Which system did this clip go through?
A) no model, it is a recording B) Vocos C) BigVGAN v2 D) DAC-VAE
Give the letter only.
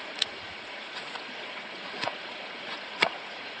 B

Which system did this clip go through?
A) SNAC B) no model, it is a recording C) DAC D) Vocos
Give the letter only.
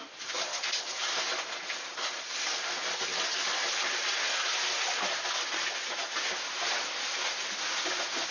B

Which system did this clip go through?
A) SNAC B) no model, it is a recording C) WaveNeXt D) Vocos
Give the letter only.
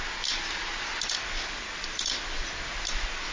B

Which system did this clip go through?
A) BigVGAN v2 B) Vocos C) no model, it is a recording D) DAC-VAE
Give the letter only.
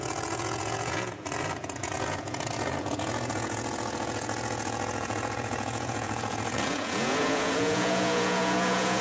B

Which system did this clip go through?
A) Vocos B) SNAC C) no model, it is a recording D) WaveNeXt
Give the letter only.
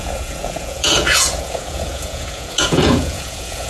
A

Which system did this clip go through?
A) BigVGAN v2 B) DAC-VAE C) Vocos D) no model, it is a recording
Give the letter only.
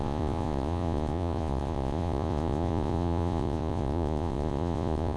C